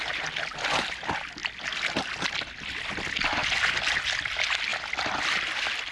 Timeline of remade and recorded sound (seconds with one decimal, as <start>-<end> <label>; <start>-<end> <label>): 0.0-5.9 recorded